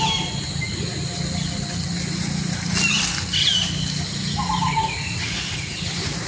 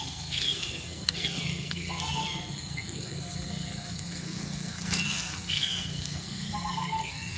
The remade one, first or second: second